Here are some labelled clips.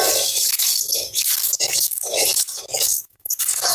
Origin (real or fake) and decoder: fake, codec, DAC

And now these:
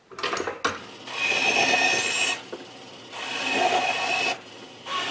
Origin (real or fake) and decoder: real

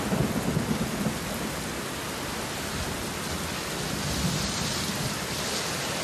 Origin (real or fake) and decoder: real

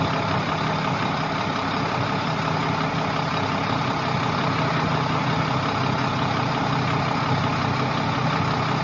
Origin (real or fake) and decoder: real